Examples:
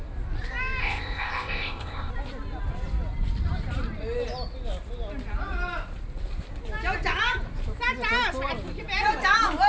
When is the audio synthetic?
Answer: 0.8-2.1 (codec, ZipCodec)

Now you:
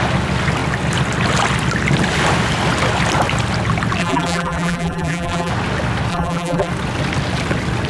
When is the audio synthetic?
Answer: 4.0-5.5 (vocoder, BigVGAN v2); 6.1-6.7

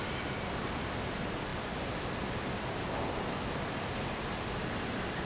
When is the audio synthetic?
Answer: none